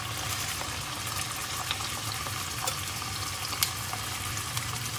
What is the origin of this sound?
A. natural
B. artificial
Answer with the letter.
A